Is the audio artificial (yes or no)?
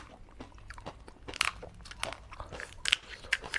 no